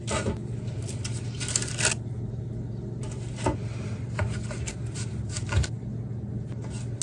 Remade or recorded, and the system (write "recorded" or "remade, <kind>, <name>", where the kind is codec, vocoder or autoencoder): recorded